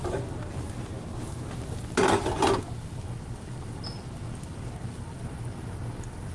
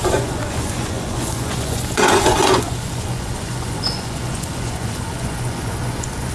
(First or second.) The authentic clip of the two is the first